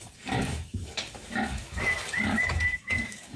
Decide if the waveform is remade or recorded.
remade